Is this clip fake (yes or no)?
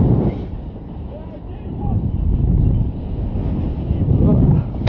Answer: no